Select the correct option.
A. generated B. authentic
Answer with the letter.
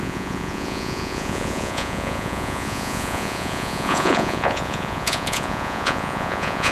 A